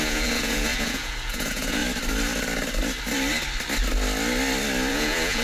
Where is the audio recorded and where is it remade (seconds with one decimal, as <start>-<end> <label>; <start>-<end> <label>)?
0.0-1.8 remade; 1.8-4.9 recorded; 4.9-5.4 remade